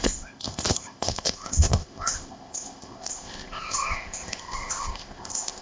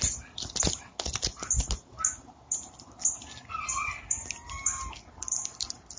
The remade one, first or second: first